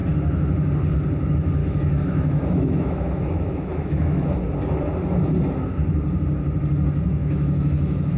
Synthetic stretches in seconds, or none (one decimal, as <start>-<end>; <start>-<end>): 1.6-4.3; 7.2-8.2